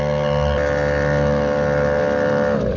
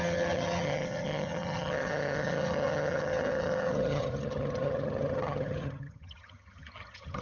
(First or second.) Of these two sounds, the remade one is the second